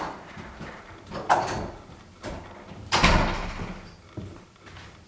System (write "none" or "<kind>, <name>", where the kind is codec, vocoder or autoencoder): none